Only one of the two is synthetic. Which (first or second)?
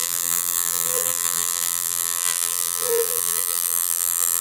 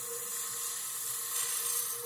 first